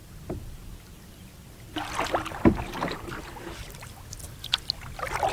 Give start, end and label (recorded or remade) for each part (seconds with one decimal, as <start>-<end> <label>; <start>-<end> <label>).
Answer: 0.0-3.2 remade; 3.2-5.3 recorded

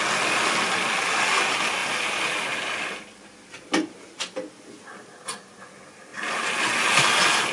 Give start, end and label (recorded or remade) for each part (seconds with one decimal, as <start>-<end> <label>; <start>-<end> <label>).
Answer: 0.0-7.5 recorded

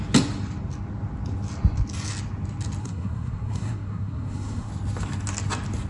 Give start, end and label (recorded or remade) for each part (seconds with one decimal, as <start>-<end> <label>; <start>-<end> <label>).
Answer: 0.0-2.8 recorded; 2.8-4.7 remade; 4.7-5.9 recorded

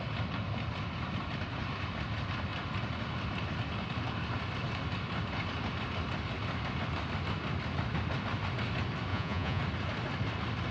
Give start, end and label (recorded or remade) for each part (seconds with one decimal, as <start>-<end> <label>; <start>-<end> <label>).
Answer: 0.0-9.1 recorded; 9.1-9.6 remade; 9.6-10.7 recorded

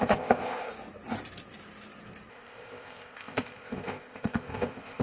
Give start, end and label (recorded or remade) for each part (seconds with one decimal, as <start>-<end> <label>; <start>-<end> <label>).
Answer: 0.0-0.7 remade; 0.7-2.3 recorded; 2.3-5.0 remade

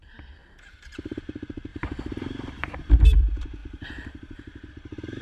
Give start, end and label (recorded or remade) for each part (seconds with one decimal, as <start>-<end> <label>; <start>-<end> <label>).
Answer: 0.0-0.4 recorded; 0.4-1.2 remade; 1.2-1.7 recorded; 1.7-2.9 remade; 2.9-3.6 recorded; 3.6-4.7 remade; 4.7-5.2 recorded

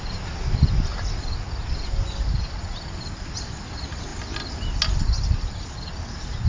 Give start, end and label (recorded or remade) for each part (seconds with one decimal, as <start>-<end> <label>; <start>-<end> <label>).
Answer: 0.0-6.5 recorded